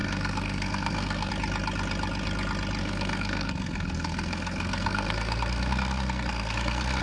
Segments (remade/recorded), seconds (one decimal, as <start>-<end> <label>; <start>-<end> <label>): 0.0-1.3 remade; 1.3-2.8 recorded; 2.8-7.0 remade